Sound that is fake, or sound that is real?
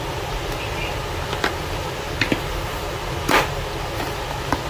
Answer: real